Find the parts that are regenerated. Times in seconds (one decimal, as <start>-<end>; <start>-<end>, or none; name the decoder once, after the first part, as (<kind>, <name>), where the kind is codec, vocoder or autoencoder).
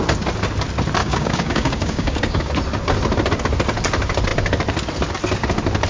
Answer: 1.0-2.5 (codec, DAC)